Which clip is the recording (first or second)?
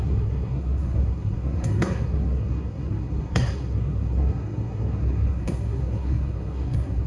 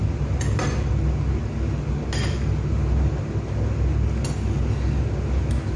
second